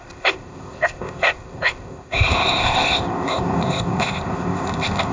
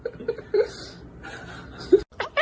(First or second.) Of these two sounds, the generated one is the first